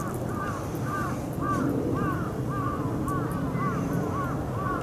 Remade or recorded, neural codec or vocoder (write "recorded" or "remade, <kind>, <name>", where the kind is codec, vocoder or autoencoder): recorded